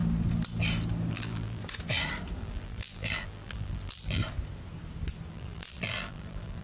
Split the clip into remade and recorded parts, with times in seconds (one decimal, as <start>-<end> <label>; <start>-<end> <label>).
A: 0.0-1.1 recorded; 1.1-1.6 remade; 1.6-2.4 recorded; 2.4-4.2 remade; 4.2-5.3 recorded; 5.3-6.6 remade